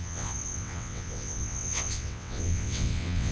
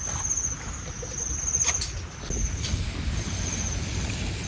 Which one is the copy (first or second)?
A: first